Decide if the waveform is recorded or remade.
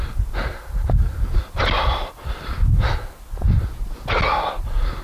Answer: recorded